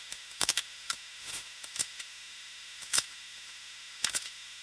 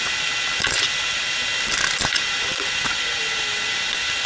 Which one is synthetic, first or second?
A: first